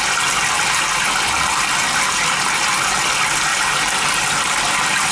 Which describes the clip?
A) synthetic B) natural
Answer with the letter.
B